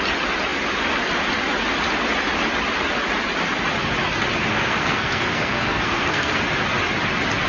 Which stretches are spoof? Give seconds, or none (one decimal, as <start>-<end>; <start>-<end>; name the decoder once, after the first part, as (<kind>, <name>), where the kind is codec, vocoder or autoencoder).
4.5-6.4 (codec, SNAC)